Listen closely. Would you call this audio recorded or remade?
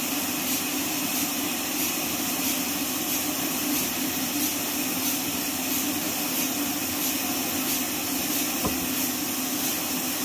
recorded